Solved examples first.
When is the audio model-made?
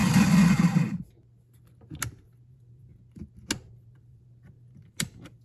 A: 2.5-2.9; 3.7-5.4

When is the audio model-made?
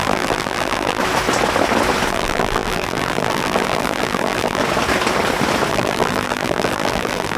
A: 0.0-1.0; 2.1-4.6; 5.7-7.4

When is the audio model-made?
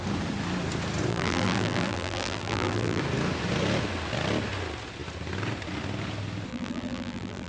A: 1.1-3.0; 6.5-7.5